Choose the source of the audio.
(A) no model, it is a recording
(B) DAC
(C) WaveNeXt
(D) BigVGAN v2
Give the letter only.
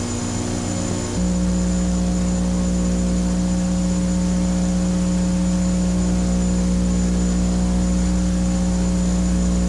A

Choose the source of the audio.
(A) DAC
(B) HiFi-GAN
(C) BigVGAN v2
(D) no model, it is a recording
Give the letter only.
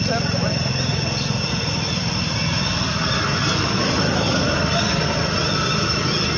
D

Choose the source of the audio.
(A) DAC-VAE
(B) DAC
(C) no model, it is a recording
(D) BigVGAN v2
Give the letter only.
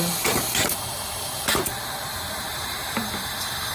D